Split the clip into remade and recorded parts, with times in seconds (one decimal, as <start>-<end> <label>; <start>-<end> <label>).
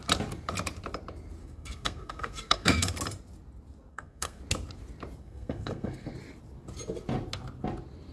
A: 0.0-1.4 recorded; 1.4-2.9 remade; 2.9-3.9 recorded; 3.9-4.4 remade; 4.4-5.2 recorded; 5.2-6.1 remade; 6.1-8.1 recorded